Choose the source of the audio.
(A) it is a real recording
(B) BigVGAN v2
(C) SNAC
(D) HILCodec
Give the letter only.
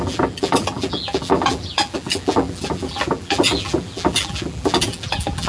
B